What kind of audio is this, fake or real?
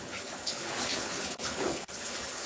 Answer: fake